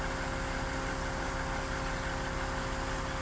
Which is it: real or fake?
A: real